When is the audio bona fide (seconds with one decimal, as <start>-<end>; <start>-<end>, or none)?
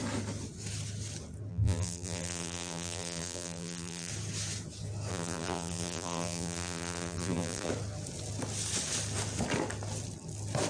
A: 0.0-1.5; 4.1-5.1; 7.7-10.7